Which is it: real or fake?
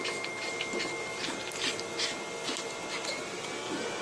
real